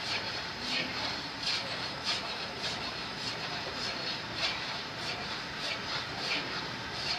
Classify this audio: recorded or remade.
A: remade